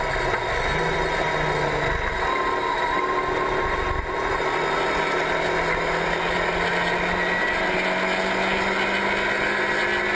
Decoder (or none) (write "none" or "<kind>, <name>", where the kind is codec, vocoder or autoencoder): none